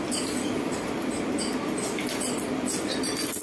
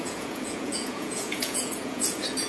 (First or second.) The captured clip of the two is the first